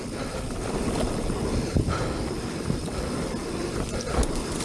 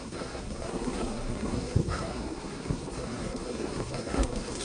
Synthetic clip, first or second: second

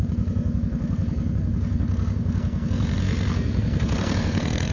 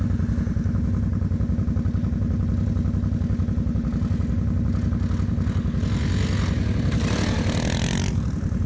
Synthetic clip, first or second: first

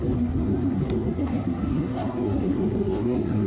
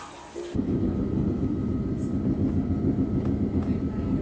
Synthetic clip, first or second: first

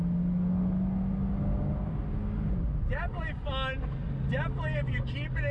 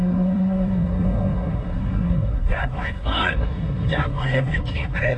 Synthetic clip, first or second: second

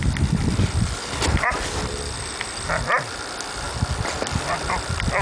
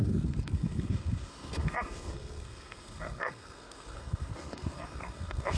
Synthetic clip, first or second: second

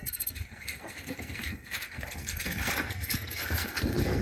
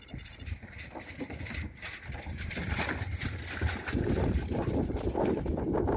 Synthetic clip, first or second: first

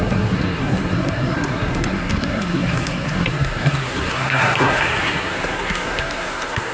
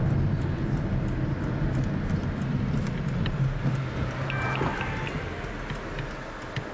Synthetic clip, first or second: first